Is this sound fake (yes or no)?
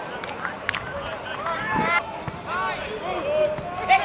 no